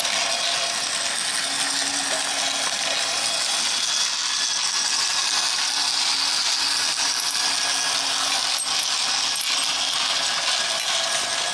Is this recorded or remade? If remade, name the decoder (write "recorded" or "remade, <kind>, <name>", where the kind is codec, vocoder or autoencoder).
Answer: recorded